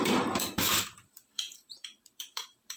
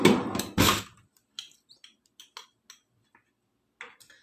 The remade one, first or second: first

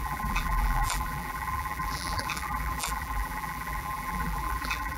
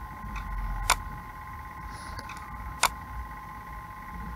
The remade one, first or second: first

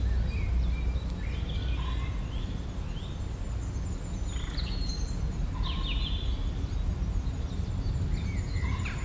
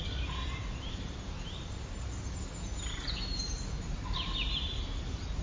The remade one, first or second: second